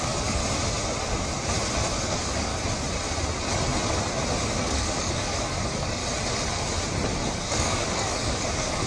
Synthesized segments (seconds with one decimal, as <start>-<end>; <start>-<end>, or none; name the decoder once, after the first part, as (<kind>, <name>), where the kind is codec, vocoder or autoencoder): 0.0-0.4 (codec, DAC); 2.0-2.5; 4.5-6.0; 7.3-8.9